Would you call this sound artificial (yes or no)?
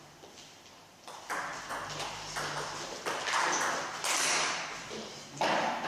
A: no